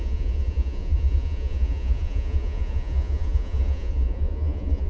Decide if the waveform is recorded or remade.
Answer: remade